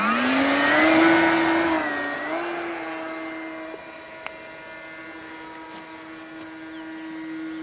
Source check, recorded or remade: recorded